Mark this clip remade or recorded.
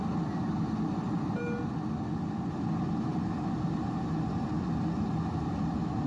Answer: recorded